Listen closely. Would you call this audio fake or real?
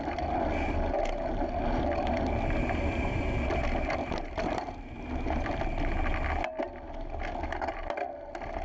real